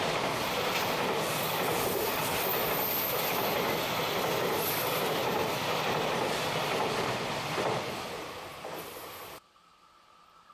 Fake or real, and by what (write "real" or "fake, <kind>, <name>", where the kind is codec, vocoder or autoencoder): real